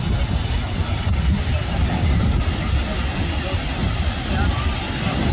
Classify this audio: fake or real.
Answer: real